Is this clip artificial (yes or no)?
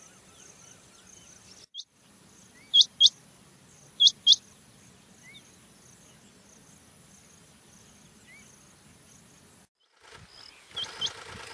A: no